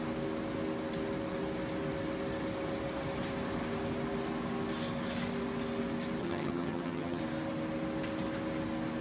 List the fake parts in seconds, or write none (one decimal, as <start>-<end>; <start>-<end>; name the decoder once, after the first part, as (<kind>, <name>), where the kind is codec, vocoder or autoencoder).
6.2-7.2 (vocoder, HiFi-GAN)